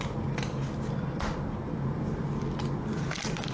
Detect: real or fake real